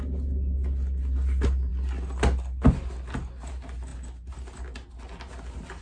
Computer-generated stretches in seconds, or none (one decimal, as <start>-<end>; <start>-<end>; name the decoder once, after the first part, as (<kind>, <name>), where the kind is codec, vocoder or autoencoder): none